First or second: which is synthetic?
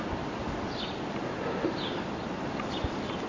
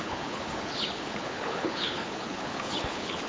second